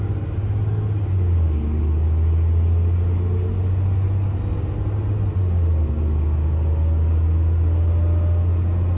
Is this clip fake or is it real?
real